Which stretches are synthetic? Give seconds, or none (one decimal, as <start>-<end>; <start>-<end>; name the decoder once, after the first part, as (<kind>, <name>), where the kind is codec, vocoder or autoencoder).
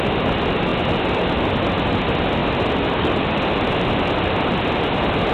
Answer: none